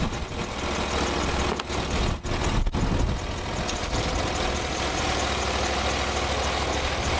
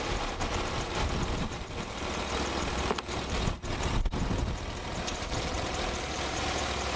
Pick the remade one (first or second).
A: second